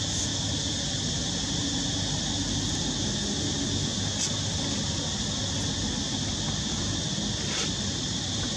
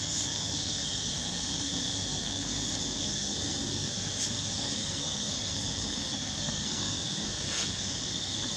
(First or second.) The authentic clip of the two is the first